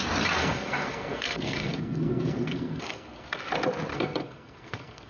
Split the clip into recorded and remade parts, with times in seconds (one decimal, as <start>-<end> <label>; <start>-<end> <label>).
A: 0.0-0.4 recorded; 0.4-3.5 remade; 3.5-3.9 recorded; 3.9-5.1 remade